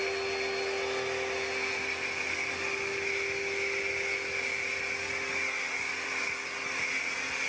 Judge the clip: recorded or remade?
recorded